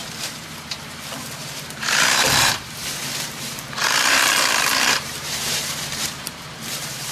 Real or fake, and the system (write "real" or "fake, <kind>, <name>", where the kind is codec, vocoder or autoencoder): fake, vocoder, BigVGAN v2